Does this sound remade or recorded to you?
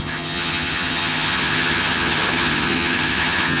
remade